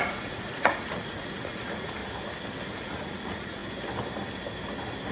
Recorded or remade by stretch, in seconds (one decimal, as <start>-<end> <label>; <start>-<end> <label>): 0.0-2.0 remade; 2.0-2.8 recorded; 2.8-3.6 remade; 3.6-5.1 recorded

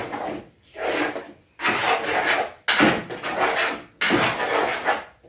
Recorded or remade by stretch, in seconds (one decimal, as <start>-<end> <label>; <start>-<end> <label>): 0.0-5.3 recorded

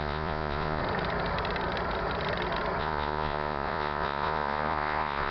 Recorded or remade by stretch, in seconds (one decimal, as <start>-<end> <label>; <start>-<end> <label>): 0.0-0.8 remade; 0.8-2.8 recorded; 2.8-5.3 remade

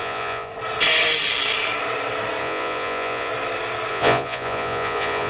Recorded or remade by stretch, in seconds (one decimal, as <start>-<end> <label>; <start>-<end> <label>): 0.0-0.5 remade; 0.5-2.4 recorded; 2.4-3.3 remade; 3.3-3.9 recorded; 3.9-5.3 remade

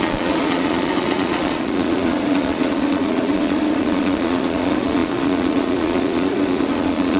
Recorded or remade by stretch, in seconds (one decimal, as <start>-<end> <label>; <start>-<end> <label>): 0.0-7.2 remade